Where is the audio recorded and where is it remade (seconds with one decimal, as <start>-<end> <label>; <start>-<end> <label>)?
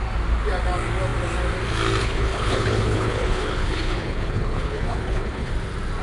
0.0-2.0 recorded; 2.0-5.5 remade; 5.5-6.0 recorded